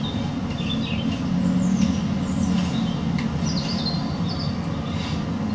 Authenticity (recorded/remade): recorded